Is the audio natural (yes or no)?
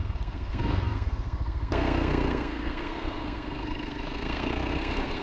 no